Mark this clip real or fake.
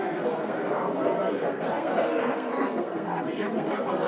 fake